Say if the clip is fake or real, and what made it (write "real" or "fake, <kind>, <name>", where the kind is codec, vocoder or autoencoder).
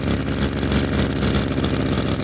real